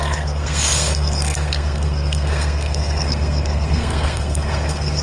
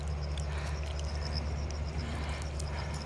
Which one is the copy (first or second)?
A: first